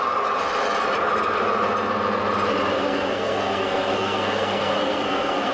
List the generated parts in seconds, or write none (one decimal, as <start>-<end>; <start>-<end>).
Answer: 2.7-5.5